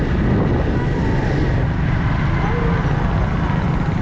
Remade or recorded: recorded